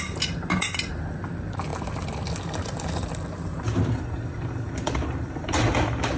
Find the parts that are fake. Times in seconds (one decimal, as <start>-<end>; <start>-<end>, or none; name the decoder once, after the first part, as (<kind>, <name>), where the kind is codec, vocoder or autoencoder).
0.0-6.2 (vocoder, BigVGAN v2)